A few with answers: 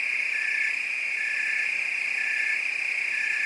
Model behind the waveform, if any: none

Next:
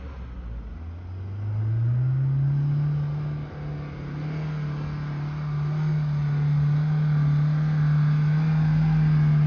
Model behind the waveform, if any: none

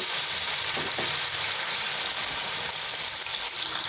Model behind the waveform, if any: none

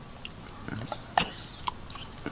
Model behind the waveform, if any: none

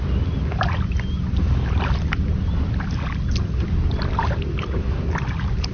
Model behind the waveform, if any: none